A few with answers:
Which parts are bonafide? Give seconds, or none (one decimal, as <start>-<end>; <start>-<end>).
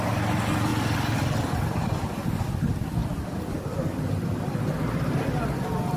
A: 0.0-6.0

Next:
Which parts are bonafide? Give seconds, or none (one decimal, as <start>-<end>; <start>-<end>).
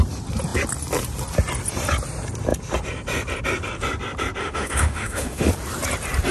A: 0.0-4.4; 5.5-6.3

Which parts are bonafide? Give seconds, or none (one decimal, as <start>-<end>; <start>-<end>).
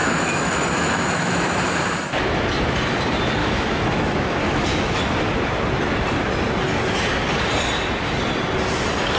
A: 1.6-3.4; 5.0-9.2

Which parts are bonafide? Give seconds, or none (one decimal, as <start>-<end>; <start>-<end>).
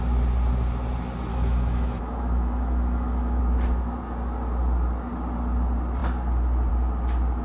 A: 0.0-1.3; 3.4-7.4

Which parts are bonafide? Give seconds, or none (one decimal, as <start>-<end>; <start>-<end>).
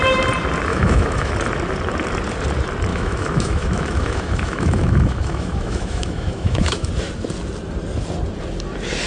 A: 0.0-0.7; 1.3-2.9; 6.9-9.1